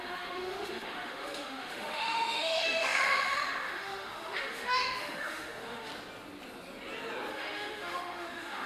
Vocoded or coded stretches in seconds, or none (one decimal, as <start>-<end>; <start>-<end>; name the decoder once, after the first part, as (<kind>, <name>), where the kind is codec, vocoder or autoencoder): 0.0-5.9 (autoencoder, DAC-VAE); 7.3-8.7